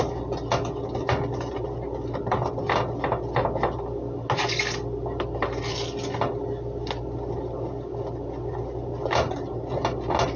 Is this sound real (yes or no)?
yes